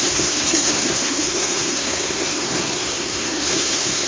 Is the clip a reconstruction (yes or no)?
yes